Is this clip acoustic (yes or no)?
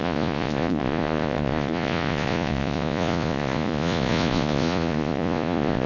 no